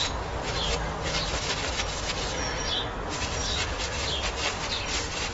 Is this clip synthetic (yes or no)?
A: no